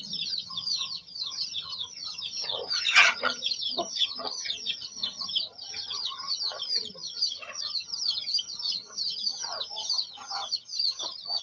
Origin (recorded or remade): remade